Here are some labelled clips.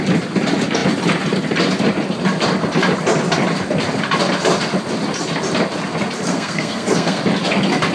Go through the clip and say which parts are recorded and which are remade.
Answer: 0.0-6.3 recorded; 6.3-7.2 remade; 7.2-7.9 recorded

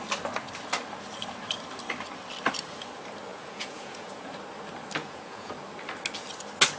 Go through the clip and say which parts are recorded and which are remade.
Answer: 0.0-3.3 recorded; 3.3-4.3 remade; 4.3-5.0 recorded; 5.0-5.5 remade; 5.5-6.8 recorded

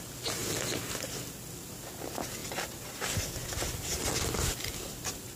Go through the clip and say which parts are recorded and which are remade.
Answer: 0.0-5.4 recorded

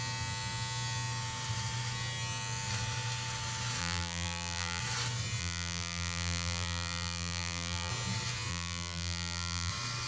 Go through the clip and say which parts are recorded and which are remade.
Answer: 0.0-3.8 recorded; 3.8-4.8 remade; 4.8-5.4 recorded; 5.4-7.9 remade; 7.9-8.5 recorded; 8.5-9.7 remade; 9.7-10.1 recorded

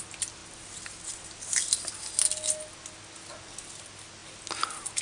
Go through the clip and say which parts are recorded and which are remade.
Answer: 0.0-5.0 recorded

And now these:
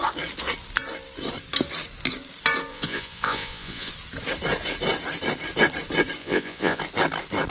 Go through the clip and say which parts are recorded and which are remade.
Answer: 0.0-2.7 recorded; 2.7-3.9 remade; 3.9-6.2 recorded; 6.2-6.8 remade; 6.8-7.5 recorded

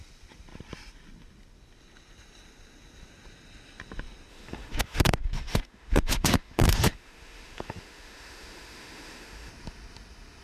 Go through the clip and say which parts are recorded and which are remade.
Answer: 0.0-4.3 recorded; 4.3-9.5 remade; 9.5-10.4 recorded